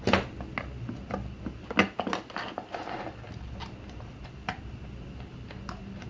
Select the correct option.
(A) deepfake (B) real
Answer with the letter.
B